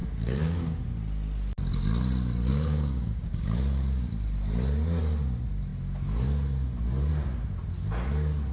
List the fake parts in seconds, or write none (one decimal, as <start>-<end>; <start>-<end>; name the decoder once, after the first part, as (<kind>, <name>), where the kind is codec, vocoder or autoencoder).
0.0-0.8 (codec, DAC); 2.5-3.6